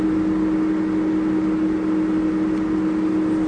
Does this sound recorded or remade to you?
recorded